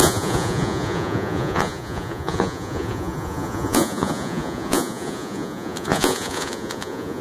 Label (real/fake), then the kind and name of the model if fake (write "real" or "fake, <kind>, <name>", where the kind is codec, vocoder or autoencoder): fake, vocoder, Vocos